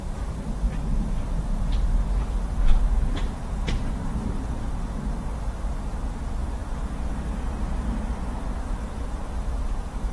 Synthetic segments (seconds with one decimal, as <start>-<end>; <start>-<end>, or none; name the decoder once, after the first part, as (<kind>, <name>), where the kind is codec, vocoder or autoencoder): 0.0-6.6 (vocoder, BigVGAN v2); 8.5-10.1

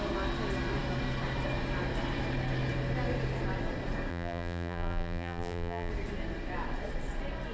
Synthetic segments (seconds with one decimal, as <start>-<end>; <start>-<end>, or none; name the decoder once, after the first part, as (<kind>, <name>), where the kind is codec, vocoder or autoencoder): 4.1-5.9 (vocoder, BigVGAN v2)

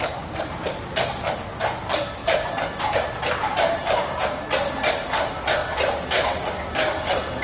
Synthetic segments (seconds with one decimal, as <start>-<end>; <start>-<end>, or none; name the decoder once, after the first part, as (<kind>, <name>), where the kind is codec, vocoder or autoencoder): 2.2-4.2 (vocoder, BigVGAN v2)

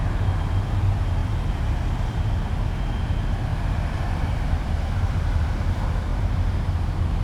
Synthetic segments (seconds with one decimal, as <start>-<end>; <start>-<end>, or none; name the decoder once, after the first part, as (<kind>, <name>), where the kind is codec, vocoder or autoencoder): 3.5-5.4 (vocoder, BigVGAN v2); 6.1-6.6